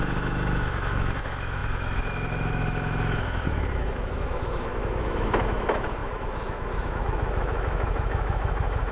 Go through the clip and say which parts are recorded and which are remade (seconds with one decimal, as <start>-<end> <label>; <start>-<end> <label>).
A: 0.0-8.9 remade